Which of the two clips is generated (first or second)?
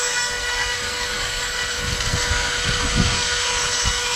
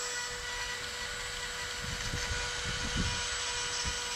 first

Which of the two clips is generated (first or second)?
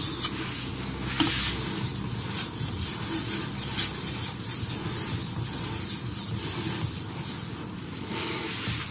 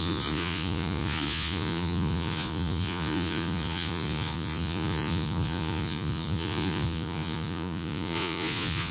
second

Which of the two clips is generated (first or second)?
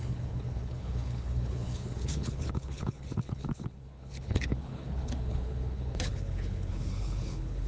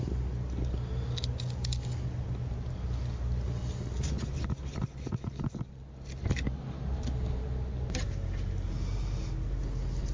first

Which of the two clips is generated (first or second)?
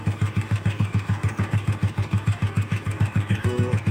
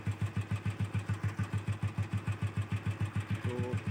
first